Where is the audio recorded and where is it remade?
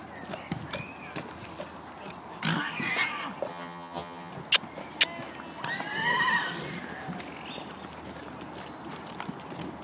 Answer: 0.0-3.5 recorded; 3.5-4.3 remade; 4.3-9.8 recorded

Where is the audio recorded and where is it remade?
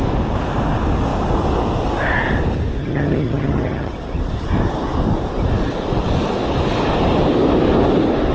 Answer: 0.0-2.8 recorded; 2.8-3.9 remade; 3.9-8.3 recorded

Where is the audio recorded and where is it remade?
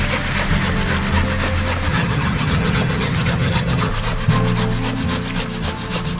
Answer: 0.0-1.9 recorded; 1.9-3.9 remade; 3.9-6.2 recorded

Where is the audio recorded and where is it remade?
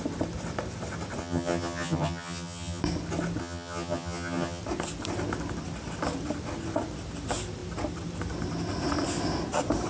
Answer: 0.0-1.2 recorded; 1.2-2.8 remade; 2.8-3.4 recorded; 3.4-4.6 remade; 4.6-9.9 recorded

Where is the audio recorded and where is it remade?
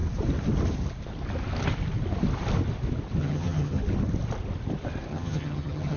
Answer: 0.0-3.2 recorded; 3.2-3.8 remade; 3.8-5.1 recorded; 5.1-6.0 remade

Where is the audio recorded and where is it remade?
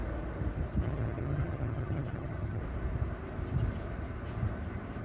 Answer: 0.0-0.8 recorded; 0.8-2.6 remade; 2.6-5.0 recorded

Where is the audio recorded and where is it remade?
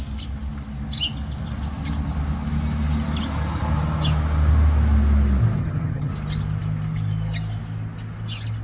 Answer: 0.0-5.6 recorded; 5.6-6.1 remade; 6.1-8.6 recorded